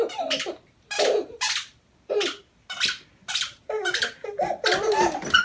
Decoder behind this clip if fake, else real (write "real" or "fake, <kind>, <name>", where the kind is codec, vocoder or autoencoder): real